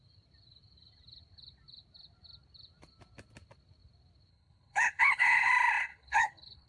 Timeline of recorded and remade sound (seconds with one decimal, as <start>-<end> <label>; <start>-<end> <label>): 0.0-4.3 recorded; 4.3-5.5 remade; 5.5-5.9 recorded; 5.9-6.7 remade